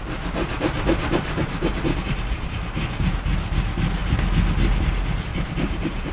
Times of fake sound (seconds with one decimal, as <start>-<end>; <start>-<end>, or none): 0.0-2.8; 5.3-6.1